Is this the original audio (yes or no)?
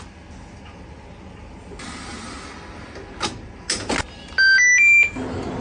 yes